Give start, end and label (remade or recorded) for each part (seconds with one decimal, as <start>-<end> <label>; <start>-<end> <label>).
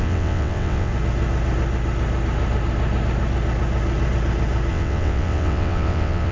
0.0-0.9 remade; 0.9-4.7 recorded; 4.7-6.3 remade